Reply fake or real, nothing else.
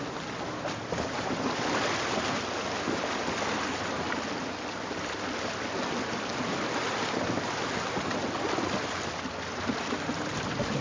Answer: real